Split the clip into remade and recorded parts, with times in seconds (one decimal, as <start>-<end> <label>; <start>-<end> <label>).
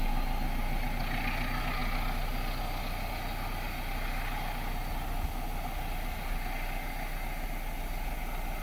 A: 0.0-8.6 recorded